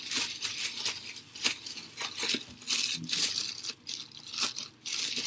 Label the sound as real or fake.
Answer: real